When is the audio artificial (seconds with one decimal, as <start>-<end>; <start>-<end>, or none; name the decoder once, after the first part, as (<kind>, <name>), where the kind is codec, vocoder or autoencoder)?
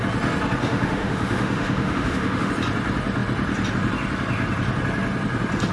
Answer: 0.6-2.5 (autoencoder, DAC-VAE)